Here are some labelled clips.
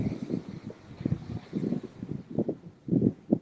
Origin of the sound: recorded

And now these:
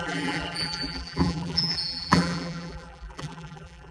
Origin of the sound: remade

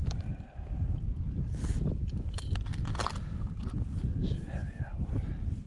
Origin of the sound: recorded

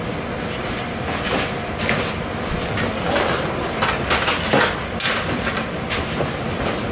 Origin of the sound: recorded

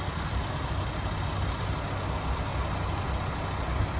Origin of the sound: recorded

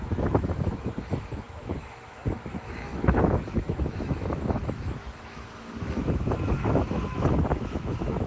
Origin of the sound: remade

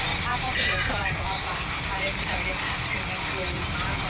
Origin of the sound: recorded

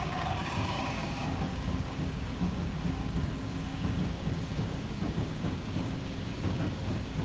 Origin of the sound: remade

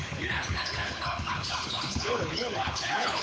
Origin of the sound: remade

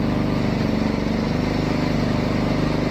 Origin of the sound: recorded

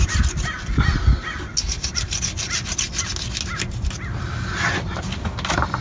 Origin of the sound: recorded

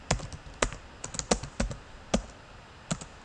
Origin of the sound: recorded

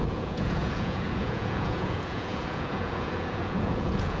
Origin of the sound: remade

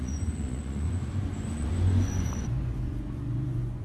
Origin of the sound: remade